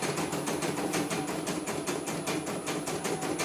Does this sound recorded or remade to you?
recorded